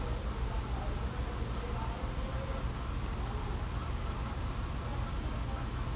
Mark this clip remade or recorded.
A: recorded